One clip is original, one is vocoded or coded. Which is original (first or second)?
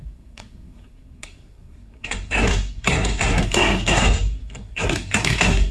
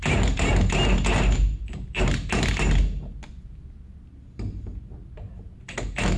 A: second